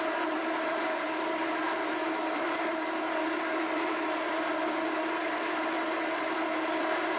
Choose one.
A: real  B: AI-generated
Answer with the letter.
B